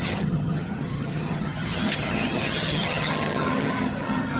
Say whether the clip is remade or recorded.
remade